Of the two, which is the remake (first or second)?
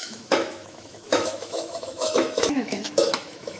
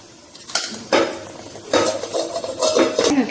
first